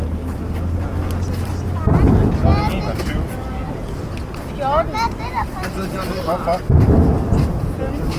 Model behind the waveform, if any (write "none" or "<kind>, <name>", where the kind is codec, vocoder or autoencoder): none